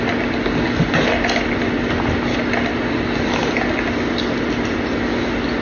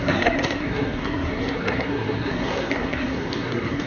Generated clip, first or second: second